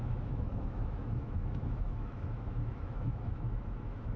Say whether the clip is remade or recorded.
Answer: remade